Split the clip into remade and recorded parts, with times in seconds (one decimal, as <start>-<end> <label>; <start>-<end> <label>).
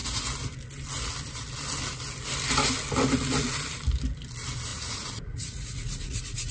0.0-4.7 recorded; 4.7-6.5 remade